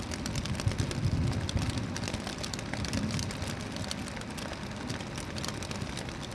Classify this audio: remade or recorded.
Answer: recorded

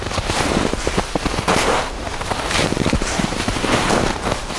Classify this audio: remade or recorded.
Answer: remade